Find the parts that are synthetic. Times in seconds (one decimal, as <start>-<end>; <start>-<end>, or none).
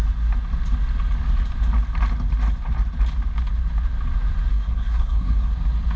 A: 4.5-5.5